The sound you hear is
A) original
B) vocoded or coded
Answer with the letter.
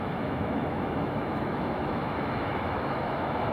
B